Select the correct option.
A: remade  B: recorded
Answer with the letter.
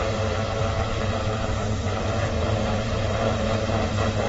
A